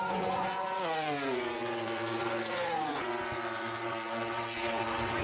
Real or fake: fake